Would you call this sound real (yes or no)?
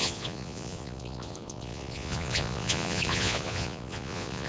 no